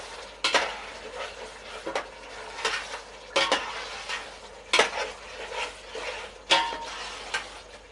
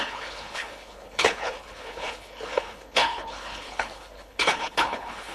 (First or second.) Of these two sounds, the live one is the first